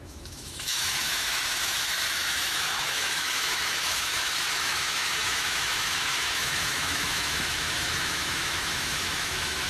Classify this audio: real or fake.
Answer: fake